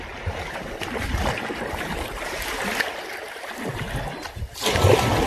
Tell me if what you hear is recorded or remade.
recorded